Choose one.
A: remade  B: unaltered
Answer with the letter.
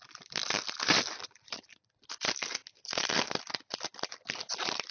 B